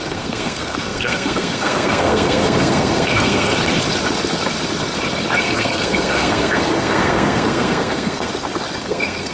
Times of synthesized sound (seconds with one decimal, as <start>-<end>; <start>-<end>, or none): 0.0-3.5; 5.4-8.3; 8.8-9.3